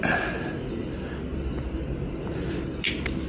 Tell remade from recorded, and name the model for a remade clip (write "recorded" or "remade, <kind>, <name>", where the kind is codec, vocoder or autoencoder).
recorded